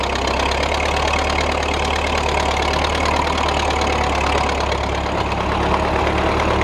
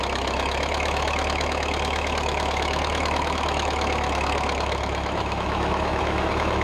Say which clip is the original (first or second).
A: first